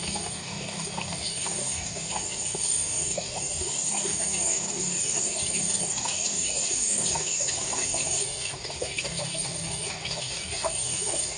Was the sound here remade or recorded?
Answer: remade